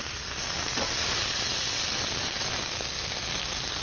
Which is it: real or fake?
real